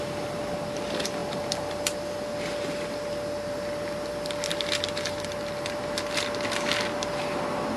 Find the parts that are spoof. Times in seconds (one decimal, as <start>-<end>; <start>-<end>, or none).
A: none